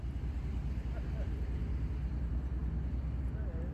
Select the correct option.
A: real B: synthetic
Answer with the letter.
A